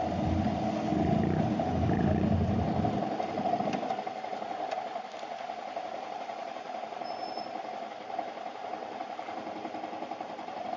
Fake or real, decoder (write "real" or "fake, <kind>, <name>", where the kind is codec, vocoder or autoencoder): real